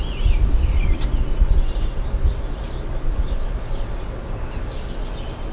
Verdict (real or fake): real